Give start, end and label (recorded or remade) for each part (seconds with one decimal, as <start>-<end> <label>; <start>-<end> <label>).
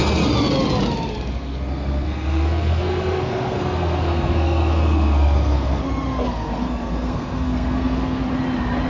0.0-1.3 recorded; 1.3-5.8 remade; 5.8-6.3 recorded; 6.3-8.2 remade; 8.2-8.9 recorded